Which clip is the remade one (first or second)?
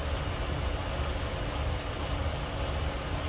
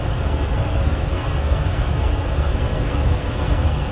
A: second